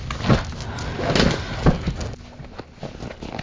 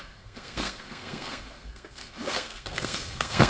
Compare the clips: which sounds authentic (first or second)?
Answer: first